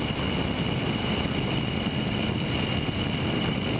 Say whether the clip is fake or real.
real